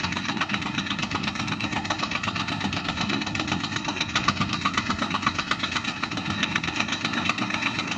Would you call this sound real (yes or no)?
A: no